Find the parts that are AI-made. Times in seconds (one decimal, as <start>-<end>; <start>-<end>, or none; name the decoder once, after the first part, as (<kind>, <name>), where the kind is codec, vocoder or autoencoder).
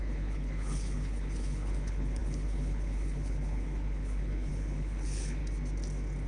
0.0-5.4 (codec, HILCodec)